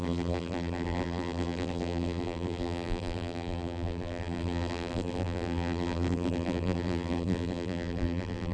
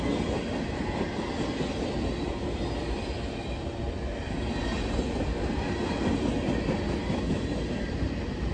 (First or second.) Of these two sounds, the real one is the second